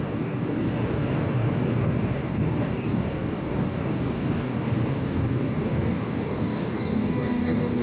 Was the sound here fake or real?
fake